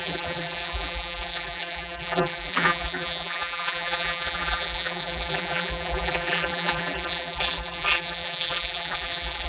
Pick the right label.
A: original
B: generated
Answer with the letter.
B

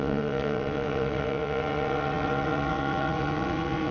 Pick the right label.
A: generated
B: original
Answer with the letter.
A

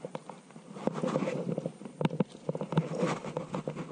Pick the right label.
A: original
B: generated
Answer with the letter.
A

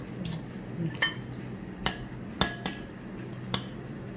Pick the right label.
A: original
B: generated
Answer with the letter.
A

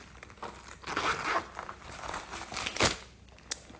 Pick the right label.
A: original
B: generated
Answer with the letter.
A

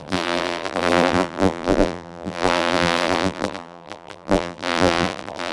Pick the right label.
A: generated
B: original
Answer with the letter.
A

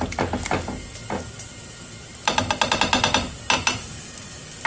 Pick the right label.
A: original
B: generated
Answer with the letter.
A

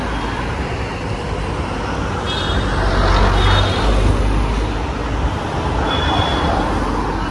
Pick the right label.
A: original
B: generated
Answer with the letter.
A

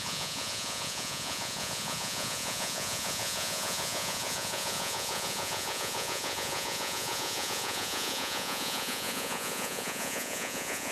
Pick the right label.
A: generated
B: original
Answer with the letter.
A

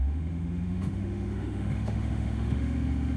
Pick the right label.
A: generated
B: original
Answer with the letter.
A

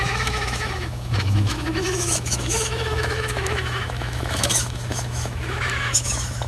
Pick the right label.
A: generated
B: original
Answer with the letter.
A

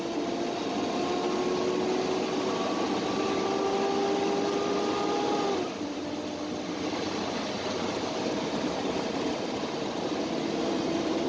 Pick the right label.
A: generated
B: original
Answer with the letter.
B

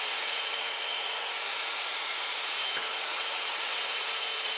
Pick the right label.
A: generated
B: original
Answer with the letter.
A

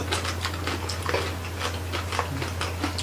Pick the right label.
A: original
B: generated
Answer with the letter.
A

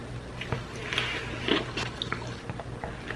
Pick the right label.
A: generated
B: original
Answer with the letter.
B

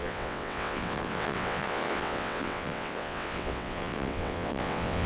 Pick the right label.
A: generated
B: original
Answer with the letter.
A